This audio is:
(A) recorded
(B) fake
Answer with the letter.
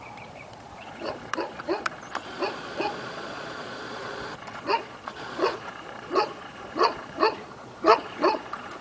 B